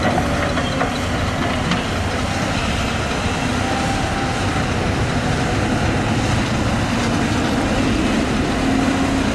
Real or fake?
real